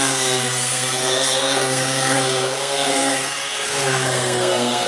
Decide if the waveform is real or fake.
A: fake